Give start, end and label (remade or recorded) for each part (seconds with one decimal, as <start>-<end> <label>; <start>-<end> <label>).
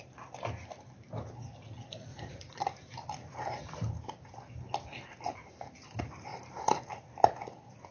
0.0-2.1 recorded; 2.1-2.6 remade; 2.6-7.9 recorded